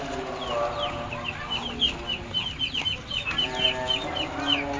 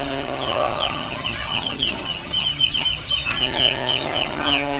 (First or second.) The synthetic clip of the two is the second